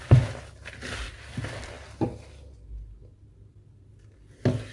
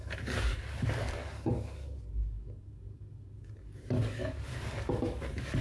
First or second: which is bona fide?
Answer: first